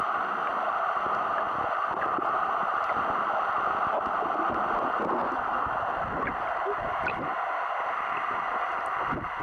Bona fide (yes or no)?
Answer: yes